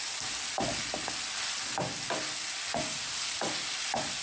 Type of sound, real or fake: real